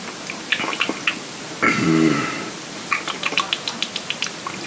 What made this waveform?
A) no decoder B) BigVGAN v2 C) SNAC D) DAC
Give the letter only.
A